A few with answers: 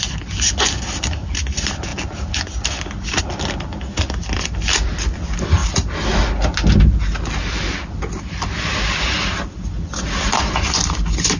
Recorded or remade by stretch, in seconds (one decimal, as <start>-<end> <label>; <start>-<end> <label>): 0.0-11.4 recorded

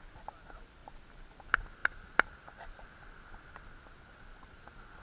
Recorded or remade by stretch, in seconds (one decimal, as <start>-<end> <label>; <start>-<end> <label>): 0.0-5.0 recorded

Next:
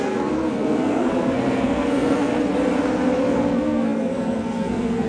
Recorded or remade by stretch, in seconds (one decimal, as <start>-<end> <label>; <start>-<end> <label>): 0.0-2.3 remade; 2.3-3.2 recorded; 3.2-5.1 remade